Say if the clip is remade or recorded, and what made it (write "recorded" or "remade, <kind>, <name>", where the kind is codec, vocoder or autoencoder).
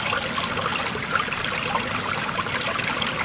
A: recorded